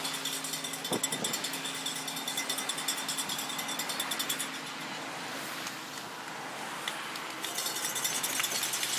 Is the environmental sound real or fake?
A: real